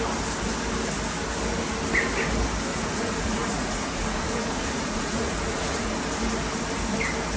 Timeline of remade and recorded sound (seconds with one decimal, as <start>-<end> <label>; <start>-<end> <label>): 0.0-2.7 recorded; 2.7-5.9 remade; 5.9-7.4 recorded